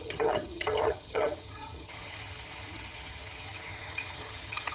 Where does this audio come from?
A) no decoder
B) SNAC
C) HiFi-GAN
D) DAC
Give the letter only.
C